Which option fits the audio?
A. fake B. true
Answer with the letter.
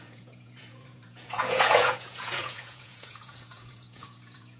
A